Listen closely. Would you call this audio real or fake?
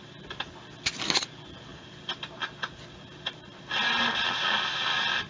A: real